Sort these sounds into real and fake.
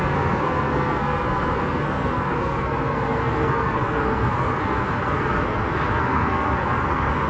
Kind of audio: fake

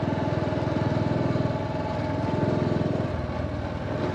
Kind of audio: real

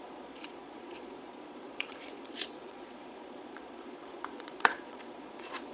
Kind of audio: fake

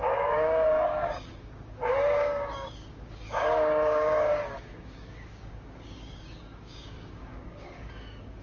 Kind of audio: fake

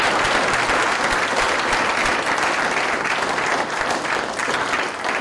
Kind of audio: real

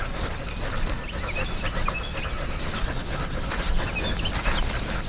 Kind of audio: real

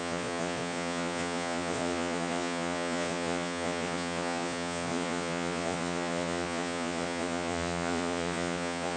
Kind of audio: fake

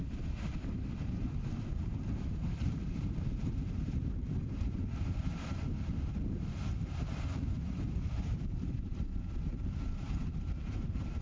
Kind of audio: fake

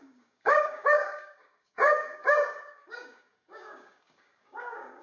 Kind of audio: fake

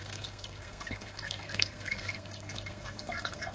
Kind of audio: fake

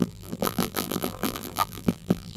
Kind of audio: fake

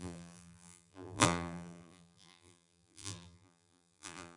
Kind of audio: fake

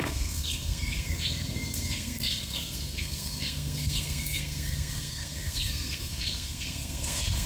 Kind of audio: fake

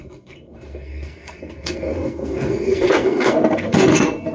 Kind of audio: fake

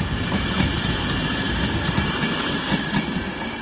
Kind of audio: real